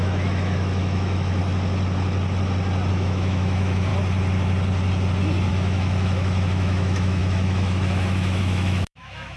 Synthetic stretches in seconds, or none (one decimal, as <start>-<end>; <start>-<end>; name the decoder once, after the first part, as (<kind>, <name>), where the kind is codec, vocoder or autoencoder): 0.0-1.4 (autoencoder, DAC-VAE); 2.9-3.9; 5.5-9.4